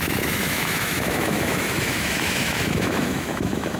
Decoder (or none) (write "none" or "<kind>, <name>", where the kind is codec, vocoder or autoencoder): autoencoder, DAC-VAE